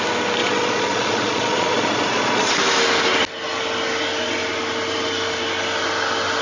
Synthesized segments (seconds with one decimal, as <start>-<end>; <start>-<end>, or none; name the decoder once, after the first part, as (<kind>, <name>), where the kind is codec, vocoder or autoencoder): 0.4-2.5 (vocoder, Vocos)